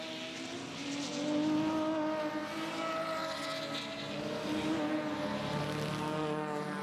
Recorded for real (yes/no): yes